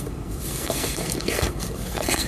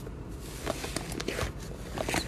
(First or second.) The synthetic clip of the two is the first